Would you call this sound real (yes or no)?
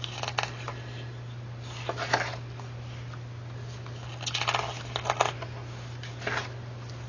yes